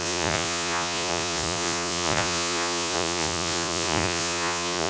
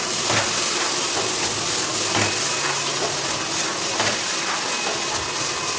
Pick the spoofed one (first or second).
first